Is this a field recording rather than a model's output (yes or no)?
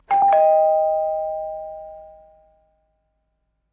yes